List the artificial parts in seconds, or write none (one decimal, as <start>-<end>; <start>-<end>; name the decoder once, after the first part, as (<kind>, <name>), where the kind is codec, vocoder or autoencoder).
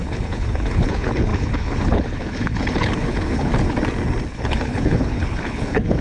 0.0-3.5 (codec, HILCodec); 4.3-6.0